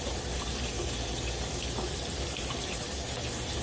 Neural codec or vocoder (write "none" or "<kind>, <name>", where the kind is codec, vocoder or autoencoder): none